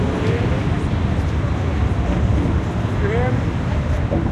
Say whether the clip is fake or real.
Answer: real